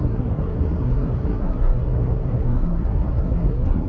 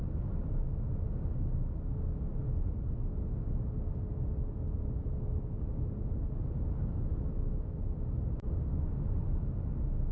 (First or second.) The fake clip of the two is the first